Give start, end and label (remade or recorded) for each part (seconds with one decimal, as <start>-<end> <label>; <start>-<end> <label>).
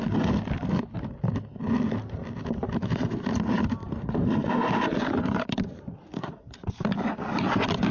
0.0-3.8 recorded; 3.8-6.9 remade; 6.9-7.9 recorded